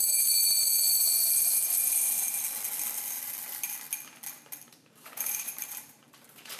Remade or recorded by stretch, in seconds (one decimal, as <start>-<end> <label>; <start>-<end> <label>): 0.0-0.7 remade; 0.7-4.7 recorded; 4.7-6.6 remade